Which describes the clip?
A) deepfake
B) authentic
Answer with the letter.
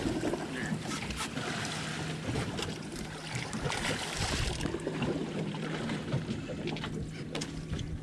B